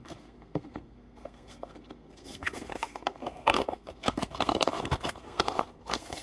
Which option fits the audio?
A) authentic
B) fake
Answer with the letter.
B